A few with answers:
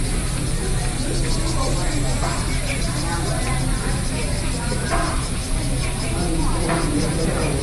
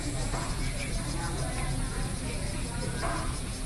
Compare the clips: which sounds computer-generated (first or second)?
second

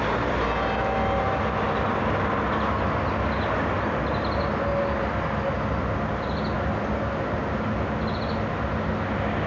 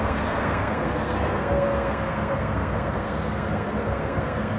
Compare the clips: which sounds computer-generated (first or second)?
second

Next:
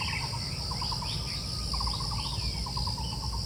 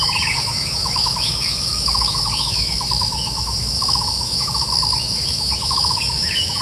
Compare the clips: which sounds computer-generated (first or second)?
second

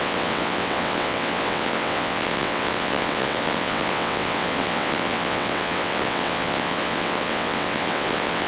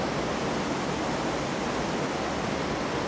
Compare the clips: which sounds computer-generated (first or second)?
first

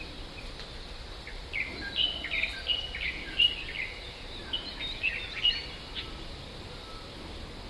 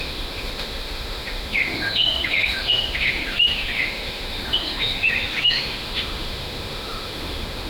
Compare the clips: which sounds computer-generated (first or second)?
second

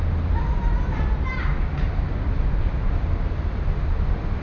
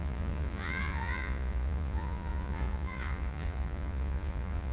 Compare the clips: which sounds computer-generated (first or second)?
second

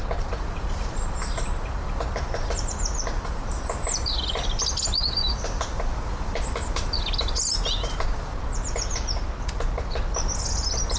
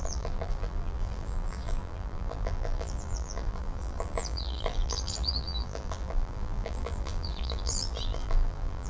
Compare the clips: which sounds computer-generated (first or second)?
second